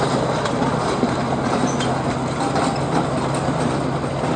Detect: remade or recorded recorded